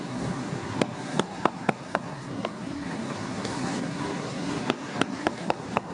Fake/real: fake